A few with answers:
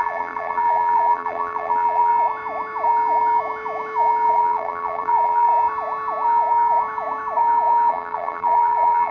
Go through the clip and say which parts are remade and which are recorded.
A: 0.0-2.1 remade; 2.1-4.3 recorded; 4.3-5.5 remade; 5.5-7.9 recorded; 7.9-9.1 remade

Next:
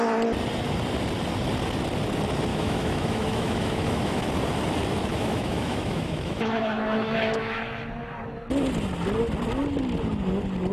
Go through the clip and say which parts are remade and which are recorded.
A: 0.0-2.5 recorded; 2.5-4.3 remade; 4.3-5.1 recorded; 5.1-7.6 remade; 7.6-10.7 recorded

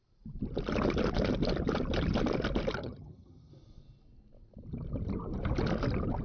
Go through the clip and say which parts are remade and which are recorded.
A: 0.0-2.8 recorded; 2.8-3.5 remade; 3.5-6.2 recorded

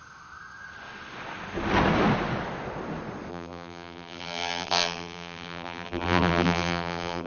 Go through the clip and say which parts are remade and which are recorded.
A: 0.0-3.3 recorded; 3.3-7.3 remade

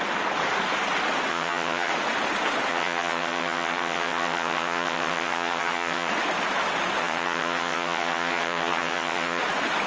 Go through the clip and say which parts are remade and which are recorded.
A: 0.0-1.3 recorded; 1.3-1.9 remade; 1.9-2.7 recorded; 2.7-6.1 remade; 6.1-7.0 recorded; 7.0-9.4 remade; 9.4-9.9 recorded

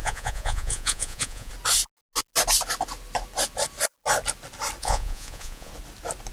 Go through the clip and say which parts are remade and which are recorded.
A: 0.0-1.5 remade; 1.5-4.8 recorded; 4.8-5.7 remade; 5.7-6.3 recorded

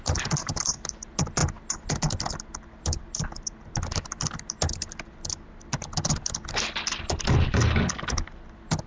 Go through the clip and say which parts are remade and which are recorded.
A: 0.0-8.9 recorded